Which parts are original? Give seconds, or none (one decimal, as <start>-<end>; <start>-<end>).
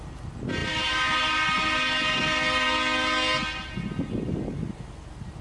0.0-5.4